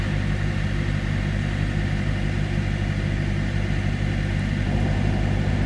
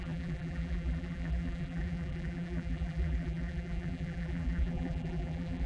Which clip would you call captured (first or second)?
first